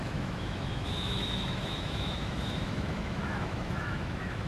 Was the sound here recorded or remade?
remade